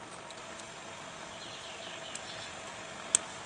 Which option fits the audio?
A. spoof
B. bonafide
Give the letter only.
B